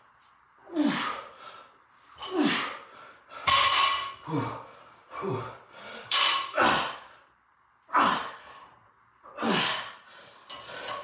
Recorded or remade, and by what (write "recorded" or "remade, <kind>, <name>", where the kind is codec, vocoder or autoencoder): recorded